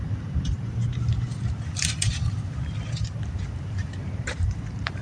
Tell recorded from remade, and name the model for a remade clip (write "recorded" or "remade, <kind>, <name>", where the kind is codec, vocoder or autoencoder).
remade, vocoder, BigVGAN v2